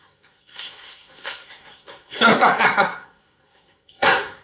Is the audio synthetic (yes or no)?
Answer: yes